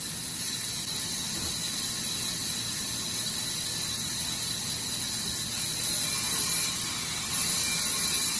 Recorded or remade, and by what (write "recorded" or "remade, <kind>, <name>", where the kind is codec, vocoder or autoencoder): recorded